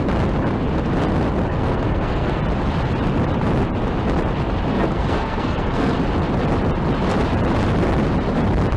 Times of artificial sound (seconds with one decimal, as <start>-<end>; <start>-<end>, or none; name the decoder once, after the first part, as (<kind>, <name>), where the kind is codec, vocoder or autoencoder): 1.5-2.4 (codec, SNAC); 4.7-6.0